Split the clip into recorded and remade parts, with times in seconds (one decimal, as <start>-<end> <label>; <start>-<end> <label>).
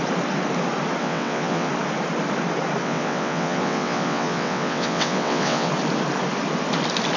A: 0.0-1.0 recorded; 1.0-1.7 remade; 1.7-2.8 recorded; 2.8-5.7 remade; 5.7-7.2 recorded